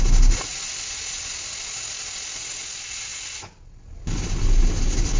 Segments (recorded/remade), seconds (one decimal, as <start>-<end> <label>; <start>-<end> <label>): 0.0-5.2 recorded